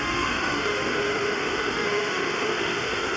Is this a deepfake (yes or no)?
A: yes